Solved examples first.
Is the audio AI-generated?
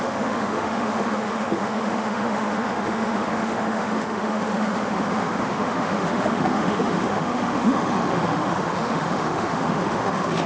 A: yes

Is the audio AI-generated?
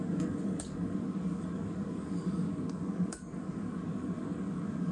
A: yes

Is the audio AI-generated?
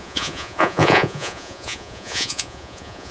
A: yes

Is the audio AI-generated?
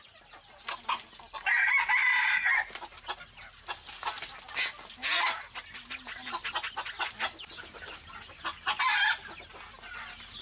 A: no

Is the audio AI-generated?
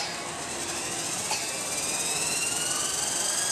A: no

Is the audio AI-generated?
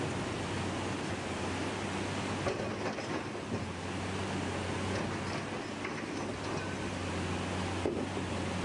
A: no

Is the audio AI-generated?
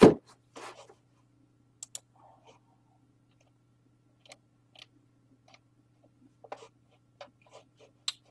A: no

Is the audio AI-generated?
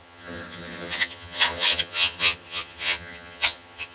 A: yes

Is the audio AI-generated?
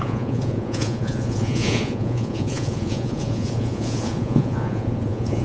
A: yes